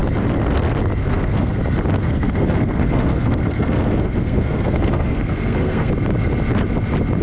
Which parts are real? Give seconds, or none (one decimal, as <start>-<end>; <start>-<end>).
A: 0.0-1.0; 1.6-2.0; 5.9-7.2